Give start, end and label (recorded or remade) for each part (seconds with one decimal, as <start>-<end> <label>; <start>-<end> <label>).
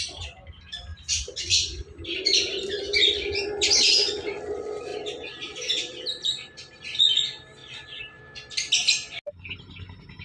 0.0-0.9 recorded; 0.9-3.5 remade; 3.5-4.9 recorded; 4.9-6.8 remade; 6.8-7.6 recorded; 7.6-8.2 remade; 8.2-10.2 recorded